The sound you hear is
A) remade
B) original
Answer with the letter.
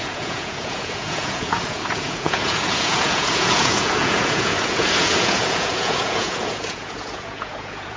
A